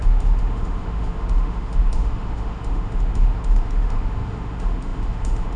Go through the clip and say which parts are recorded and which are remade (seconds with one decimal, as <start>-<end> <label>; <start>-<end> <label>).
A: 0.0-5.6 remade